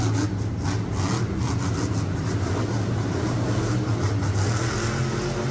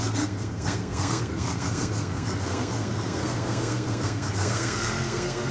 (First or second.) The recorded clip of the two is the first